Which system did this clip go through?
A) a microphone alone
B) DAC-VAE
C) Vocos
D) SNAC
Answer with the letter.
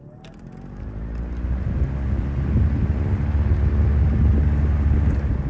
A